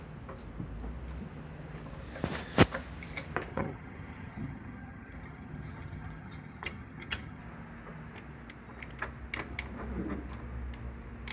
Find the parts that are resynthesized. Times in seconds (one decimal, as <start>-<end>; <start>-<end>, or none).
3.5-7.4